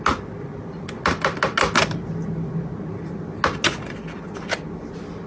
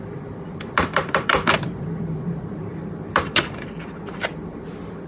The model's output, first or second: second